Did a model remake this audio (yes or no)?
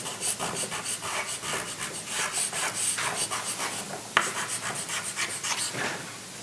no